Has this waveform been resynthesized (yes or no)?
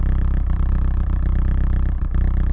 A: yes